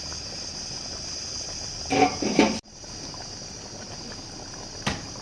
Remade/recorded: recorded